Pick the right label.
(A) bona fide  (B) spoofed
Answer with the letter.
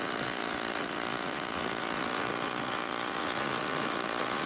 B